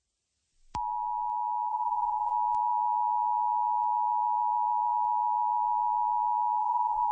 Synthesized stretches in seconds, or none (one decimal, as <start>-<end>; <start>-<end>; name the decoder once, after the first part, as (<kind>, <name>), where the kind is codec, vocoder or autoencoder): 1.7-2.3 (vocoder, BigVGAN v2); 6.6-7.1